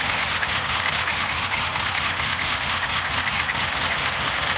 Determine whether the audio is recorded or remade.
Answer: remade